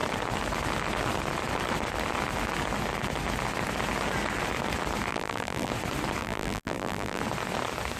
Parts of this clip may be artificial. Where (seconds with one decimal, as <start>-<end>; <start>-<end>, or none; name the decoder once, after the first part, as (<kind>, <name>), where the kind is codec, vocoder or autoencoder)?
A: 5.1-5.7 (vocoder, BigVGAN v2); 6.2-7.2

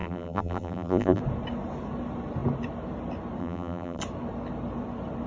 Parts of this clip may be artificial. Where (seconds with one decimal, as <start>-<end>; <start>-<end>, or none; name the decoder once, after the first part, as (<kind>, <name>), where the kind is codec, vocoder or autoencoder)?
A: 0.0-1.2 (vocoder, BigVGAN v2); 3.4-4.0

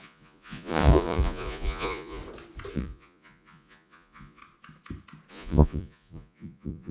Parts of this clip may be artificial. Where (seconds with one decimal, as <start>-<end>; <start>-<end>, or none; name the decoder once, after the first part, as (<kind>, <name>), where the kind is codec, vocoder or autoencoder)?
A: 0.0-2.2 (vocoder, Vocos); 2.7-4.4; 5.3-6.9

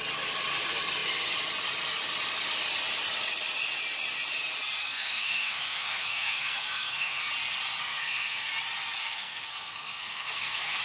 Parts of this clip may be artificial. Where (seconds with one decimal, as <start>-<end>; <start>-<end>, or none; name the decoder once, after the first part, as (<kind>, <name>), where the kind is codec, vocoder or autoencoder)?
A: 4.8-7.3 (codec, SNAC); 7.8-8.5; 9.0-10.8

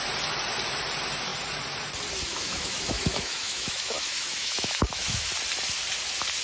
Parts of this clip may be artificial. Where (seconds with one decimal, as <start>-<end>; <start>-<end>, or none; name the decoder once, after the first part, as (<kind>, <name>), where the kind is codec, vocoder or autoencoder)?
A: 2.3-5.3 (autoencoder, DAC-VAE)

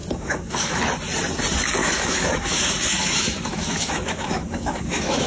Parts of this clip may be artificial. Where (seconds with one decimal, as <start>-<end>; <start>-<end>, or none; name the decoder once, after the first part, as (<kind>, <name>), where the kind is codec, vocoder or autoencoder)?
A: 0.0-0.8 (autoencoder, DAC-VAE); 1.8-5.3